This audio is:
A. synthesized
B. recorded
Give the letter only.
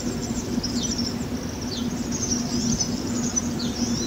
B